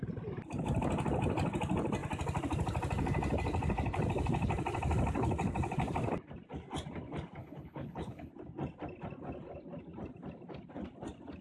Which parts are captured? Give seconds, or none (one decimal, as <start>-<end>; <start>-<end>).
0.0-7.4; 8.3-11.4